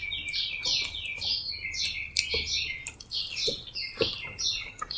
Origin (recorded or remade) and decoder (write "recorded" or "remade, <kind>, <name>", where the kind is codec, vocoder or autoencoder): recorded